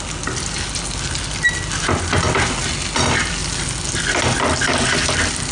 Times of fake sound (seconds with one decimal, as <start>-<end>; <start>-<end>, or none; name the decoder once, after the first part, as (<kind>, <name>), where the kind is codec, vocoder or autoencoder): none